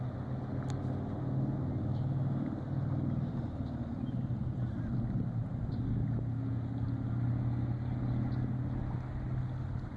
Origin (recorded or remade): recorded